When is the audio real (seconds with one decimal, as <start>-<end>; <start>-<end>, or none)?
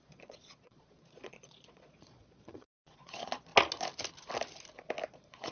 3.5-5.1